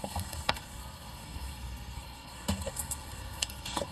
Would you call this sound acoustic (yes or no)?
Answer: no